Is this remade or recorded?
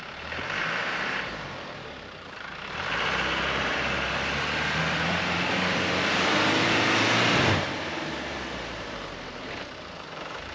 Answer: remade